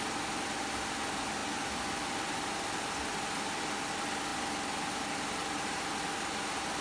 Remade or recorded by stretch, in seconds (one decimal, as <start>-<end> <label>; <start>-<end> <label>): 0.0-6.8 recorded